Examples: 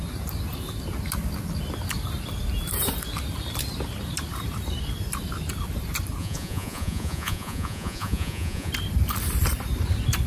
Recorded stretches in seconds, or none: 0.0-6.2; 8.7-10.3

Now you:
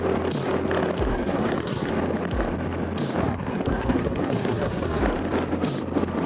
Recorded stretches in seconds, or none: 0.0-1.1; 1.9-3.2; 5.0-6.3

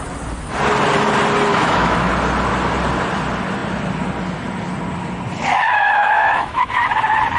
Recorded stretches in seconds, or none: 0.0-1.5; 2.1-5.5; 6.7-7.4

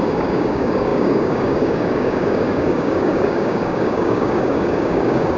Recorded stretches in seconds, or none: none

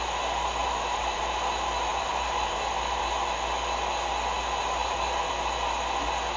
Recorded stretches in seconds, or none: 0.0-0.6; 1.2-1.9; 3.0-4.8; 5.3-6.4

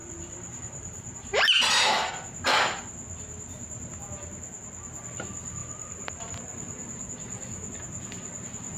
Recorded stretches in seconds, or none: 2.1-5.6; 6.4-8.8